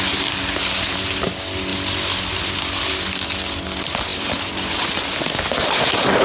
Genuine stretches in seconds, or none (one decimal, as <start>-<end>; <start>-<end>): 0.0-6.2